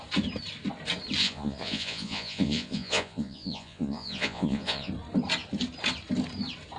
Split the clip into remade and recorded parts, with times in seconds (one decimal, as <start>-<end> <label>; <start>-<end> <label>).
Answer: 0.0-1.2 recorded; 1.2-4.9 remade; 4.9-6.8 recorded